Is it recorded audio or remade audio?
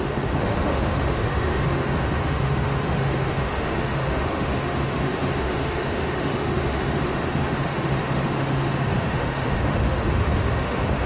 remade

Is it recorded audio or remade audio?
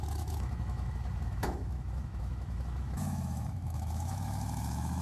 remade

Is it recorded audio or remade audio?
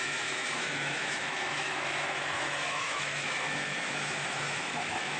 remade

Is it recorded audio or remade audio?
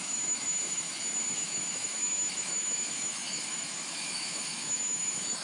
remade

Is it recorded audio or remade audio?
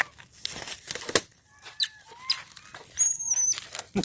recorded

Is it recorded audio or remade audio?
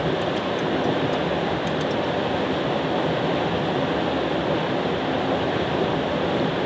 recorded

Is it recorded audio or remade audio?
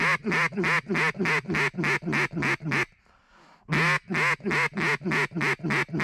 recorded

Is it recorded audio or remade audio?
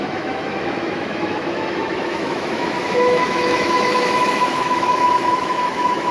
remade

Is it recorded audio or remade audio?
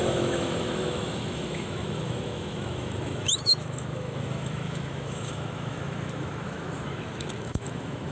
remade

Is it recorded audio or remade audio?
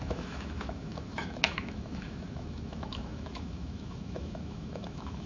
remade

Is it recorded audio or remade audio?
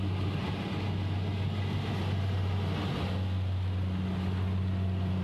recorded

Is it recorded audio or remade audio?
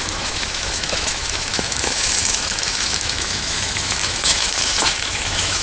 remade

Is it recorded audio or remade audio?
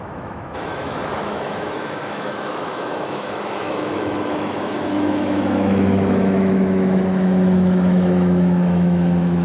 remade